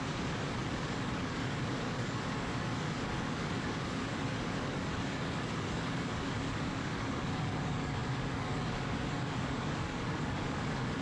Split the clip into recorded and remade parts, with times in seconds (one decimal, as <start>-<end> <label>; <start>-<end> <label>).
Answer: 0.0-11.0 remade